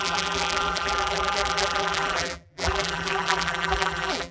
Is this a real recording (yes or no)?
no